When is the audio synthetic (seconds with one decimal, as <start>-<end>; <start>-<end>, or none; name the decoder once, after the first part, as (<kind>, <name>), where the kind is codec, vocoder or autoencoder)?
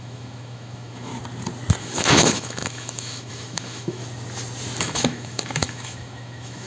0.0-1.1 (autoencoder, DAC-VAE); 1.8-4.0; 4.8-6.7